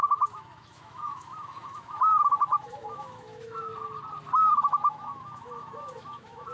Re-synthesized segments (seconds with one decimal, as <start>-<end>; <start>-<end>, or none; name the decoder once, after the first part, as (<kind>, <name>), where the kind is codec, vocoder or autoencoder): 0.0-3.7 (autoencoder, DAC-VAE); 4.4-6.5